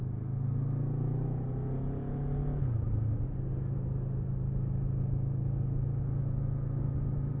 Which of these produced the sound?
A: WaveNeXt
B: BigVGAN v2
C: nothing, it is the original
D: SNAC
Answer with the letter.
C